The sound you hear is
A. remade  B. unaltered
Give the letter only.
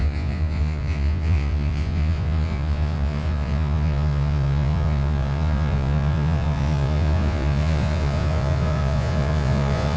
A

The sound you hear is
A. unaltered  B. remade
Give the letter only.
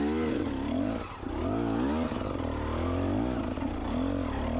A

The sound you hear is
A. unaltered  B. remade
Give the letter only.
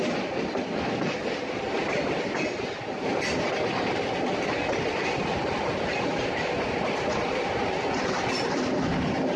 A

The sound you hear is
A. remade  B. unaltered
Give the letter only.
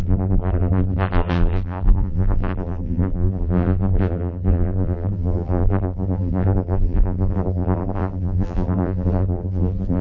A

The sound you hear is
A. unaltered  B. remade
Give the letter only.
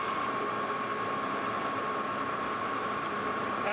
B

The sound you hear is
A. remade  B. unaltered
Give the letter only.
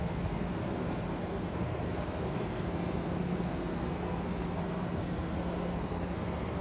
A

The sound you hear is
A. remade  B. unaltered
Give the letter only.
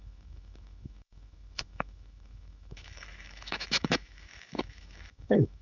A